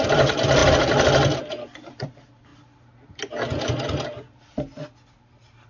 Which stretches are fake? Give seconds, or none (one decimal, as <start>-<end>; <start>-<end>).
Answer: none